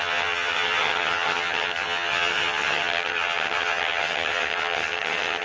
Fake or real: fake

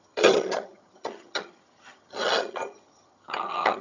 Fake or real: fake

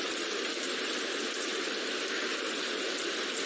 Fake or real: real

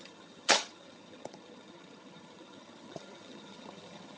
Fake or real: fake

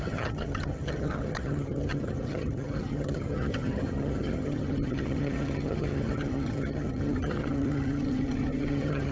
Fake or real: fake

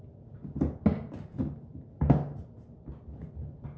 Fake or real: real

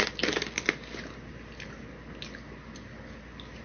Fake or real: real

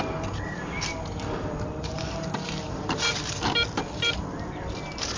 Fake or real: real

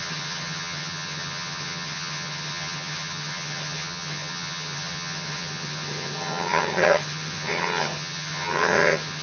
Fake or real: fake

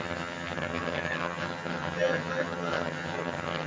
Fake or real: fake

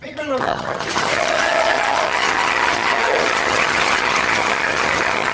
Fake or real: fake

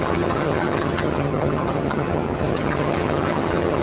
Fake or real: fake